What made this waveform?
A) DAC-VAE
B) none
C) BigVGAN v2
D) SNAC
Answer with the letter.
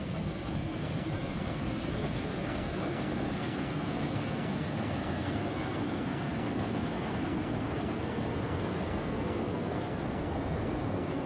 D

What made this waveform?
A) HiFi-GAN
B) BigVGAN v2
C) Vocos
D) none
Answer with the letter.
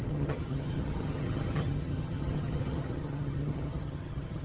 A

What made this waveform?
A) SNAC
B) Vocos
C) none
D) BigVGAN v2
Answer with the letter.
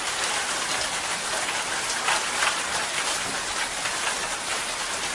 C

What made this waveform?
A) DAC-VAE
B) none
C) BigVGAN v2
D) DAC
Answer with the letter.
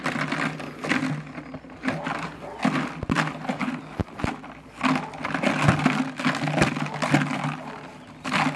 B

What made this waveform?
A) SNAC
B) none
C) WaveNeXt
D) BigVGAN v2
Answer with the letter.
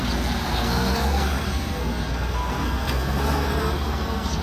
A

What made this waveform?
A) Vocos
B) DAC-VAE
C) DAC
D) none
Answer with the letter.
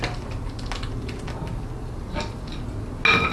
D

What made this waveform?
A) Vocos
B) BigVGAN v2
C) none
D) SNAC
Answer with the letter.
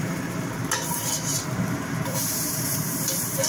B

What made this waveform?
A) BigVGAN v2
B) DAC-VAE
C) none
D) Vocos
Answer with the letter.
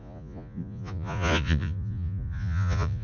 D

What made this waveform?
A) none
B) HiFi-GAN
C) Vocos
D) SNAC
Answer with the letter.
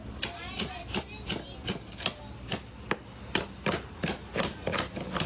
A